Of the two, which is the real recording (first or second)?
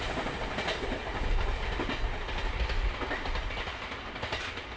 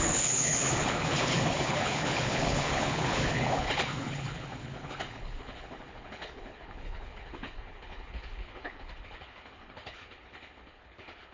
first